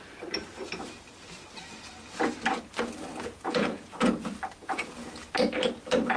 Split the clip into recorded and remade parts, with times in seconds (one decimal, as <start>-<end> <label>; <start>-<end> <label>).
0.0-3.1 recorded; 3.1-4.1 remade; 4.1-4.6 recorded; 4.6-5.1 remade; 5.1-6.2 recorded